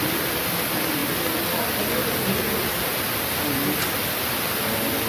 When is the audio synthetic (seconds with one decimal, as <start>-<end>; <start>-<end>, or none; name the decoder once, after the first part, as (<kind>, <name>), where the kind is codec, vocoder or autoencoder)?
none